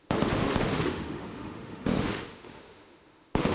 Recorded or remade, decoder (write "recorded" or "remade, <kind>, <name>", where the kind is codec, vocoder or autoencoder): remade, autoencoder, DAC-VAE